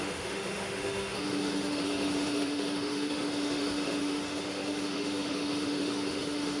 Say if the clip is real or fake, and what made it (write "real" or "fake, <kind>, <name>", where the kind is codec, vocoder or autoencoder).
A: fake, autoencoder, DAC-VAE